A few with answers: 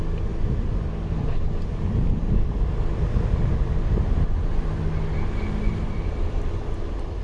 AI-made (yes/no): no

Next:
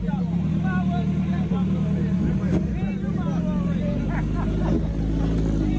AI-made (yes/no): no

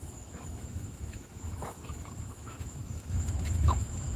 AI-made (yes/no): yes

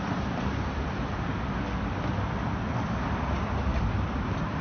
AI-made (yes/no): no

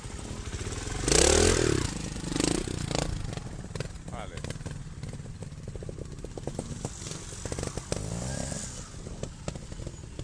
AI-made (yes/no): no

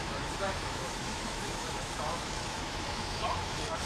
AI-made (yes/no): yes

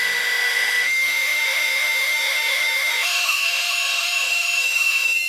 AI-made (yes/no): yes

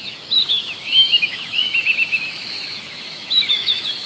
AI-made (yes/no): yes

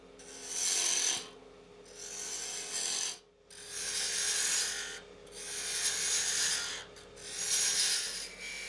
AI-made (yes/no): no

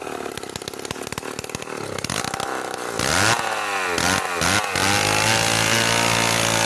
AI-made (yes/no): no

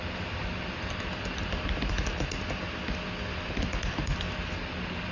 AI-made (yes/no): no